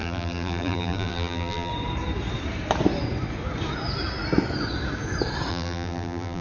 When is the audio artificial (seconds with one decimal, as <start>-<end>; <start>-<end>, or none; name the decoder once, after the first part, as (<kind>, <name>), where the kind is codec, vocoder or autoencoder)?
0.0-1.7 (vocoder, BigVGAN v2); 5.5-6.4